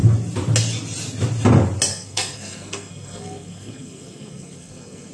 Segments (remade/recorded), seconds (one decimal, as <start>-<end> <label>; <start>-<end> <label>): 0.0-1.9 recorded; 1.9-5.1 remade